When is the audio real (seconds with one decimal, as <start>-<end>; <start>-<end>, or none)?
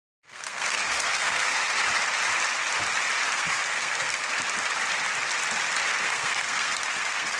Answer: 1.7-3.3; 4.3-5.9